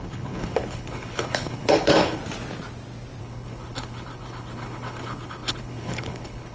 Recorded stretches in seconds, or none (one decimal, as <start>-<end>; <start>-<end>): 2.2-3.2